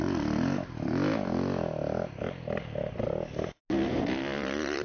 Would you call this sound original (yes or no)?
yes